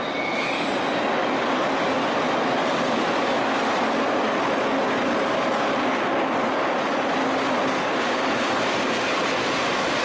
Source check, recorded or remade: recorded